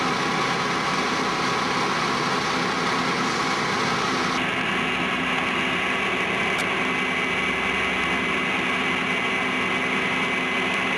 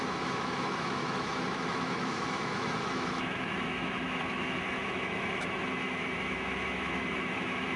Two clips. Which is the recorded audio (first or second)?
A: first